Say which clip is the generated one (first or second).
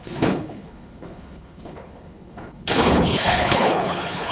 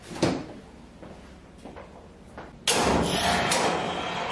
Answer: first